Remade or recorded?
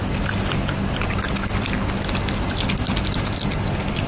recorded